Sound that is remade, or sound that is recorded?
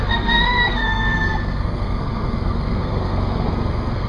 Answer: remade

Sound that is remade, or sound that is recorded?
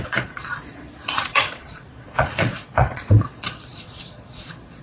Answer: remade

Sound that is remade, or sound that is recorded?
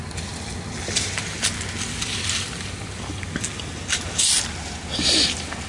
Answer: recorded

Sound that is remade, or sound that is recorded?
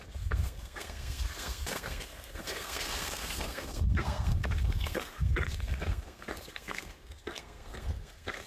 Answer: remade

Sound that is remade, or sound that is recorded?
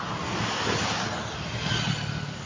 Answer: recorded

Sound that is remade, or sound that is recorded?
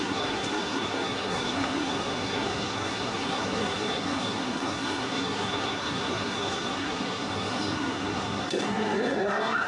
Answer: remade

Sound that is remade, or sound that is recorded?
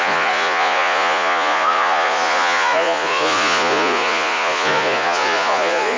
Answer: remade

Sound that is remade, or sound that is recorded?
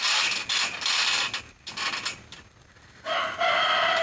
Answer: recorded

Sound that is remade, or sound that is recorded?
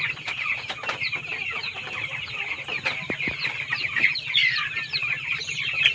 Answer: recorded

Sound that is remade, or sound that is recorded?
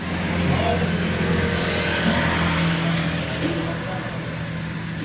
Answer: recorded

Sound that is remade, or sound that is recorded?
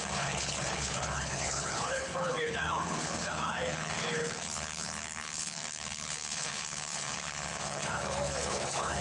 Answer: remade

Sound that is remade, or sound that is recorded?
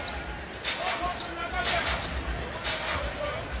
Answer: recorded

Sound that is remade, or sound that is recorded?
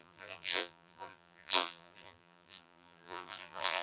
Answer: remade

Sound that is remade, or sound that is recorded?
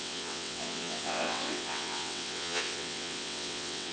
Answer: remade